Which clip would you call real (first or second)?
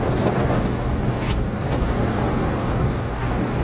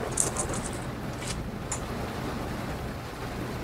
second